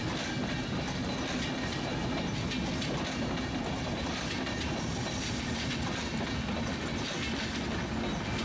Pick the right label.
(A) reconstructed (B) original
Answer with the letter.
B